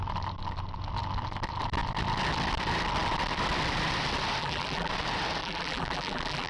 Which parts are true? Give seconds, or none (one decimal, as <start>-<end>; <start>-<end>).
0.0-4.4; 4.9-5.4